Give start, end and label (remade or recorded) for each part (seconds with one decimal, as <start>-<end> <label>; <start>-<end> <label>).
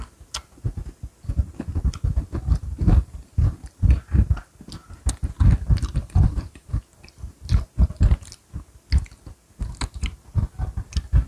0.0-6.0 recorded; 6.0-6.8 remade; 6.8-11.3 recorded